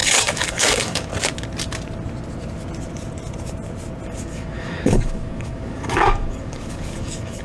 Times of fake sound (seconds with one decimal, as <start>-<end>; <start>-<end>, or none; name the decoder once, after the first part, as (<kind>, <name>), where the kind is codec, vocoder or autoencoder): 0.0-1.1 (codec, DAC); 4.2-7.4